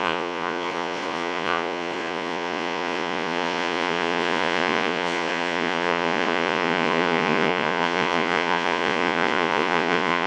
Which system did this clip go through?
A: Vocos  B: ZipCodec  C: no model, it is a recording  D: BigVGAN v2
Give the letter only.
A